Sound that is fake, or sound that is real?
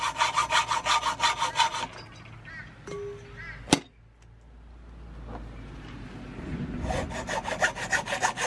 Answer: real